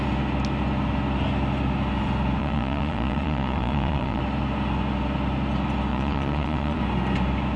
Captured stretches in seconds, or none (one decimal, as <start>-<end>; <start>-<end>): 0.0-2.4; 4.2-5.9; 6.8-7.6